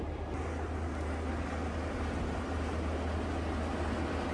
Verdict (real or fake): real